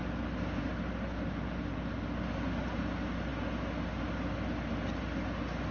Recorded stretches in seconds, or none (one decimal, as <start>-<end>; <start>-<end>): 0.0-5.7

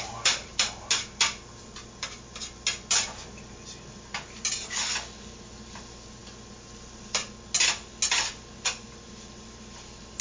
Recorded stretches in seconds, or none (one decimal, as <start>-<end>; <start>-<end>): 0.0-10.2

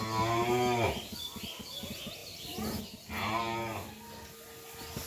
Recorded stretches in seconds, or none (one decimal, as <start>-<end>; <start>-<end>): 0.0-5.1

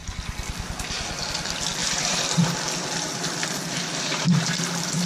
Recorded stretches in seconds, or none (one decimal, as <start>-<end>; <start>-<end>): 0.0-1.8